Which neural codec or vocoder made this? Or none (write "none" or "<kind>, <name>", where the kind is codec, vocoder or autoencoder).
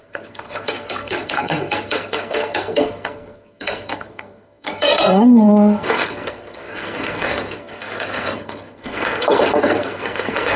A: codec, SNAC